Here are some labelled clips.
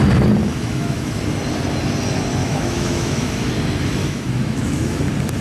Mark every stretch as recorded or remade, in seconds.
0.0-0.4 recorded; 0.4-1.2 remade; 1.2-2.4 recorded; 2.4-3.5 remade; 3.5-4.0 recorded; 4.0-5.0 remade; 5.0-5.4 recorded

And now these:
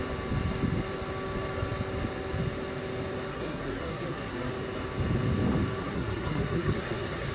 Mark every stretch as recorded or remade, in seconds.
0.0-3.3 recorded; 3.3-4.5 remade; 4.5-5.8 recorded; 5.8-7.3 remade

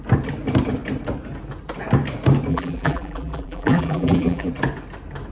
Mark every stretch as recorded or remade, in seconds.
0.0-2.5 recorded; 2.5-4.5 remade; 4.5-5.3 recorded